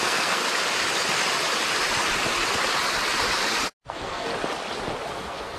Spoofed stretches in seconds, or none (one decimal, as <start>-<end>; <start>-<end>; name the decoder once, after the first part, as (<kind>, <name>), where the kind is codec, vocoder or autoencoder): 0.0-0.4 (codec, SNAC); 3.8-4.3; 5.1-5.6